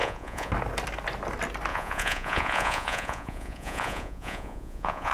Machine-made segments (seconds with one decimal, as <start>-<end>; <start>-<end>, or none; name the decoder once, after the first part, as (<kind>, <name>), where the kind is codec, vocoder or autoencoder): 0.0-0.5 (vocoder, Vocos); 1.7-5.1